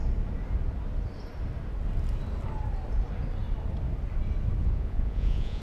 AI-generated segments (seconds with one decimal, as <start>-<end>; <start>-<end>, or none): 4.6-5.6